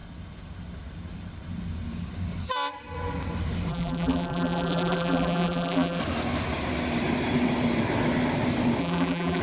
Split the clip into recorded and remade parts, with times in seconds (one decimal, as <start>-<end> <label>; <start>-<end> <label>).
0.0-3.7 recorded; 3.7-6.0 remade; 6.0-8.8 recorded; 8.8-9.4 remade

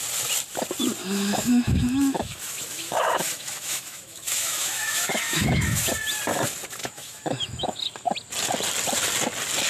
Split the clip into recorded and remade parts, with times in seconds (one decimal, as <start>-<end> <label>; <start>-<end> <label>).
0.0-1.0 recorded; 1.0-5.9 remade; 5.9-6.8 recorded; 6.8-7.8 remade; 7.8-9.7 recorded

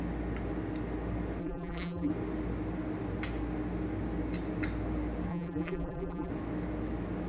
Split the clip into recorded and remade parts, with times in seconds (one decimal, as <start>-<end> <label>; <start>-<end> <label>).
0.0-1.4 recorded; 1.4-2.1 remade; 2.1-5.3 recorded; 5.3-6.3 remade; 6.3-7.3 recorded

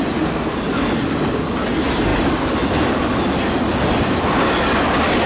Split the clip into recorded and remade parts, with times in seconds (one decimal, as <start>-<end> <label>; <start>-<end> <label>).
0.0-5.3 recorded

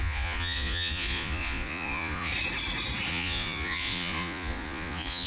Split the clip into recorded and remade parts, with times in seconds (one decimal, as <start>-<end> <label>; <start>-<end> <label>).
0.0-2.3 remade; 2.3-3.1 recorded; 3.1-5.3 remade

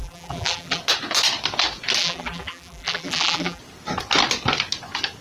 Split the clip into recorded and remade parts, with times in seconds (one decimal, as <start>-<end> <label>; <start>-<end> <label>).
0.0-0.8 remade; 0.8-2.0 recorded; 2.0-3.6 remade; 3.6-5.2 recorded

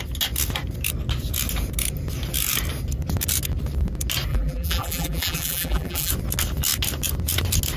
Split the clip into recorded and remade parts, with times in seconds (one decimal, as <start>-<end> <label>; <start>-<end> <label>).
0.0-4.3 recorded; 4.3-6.1 remade; 6.1-7.8 recorded